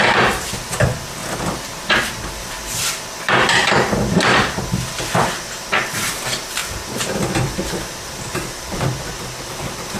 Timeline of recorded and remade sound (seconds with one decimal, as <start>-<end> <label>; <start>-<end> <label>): 0.0-10.0 remade